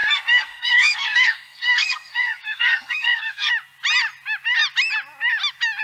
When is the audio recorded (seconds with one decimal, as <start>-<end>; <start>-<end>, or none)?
3.5-5.8